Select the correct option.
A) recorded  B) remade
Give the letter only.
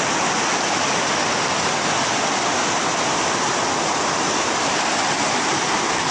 A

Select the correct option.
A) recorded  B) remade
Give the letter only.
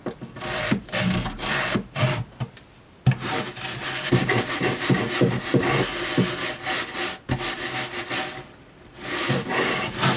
A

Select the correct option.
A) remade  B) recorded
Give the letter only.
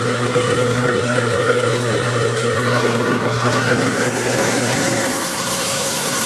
A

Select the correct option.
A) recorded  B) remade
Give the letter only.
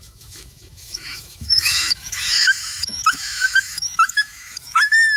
B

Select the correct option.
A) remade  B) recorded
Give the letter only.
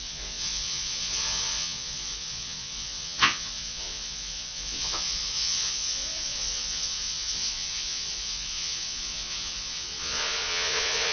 A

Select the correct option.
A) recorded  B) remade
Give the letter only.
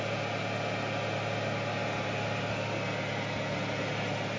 A